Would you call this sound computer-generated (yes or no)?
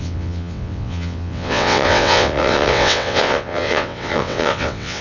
yes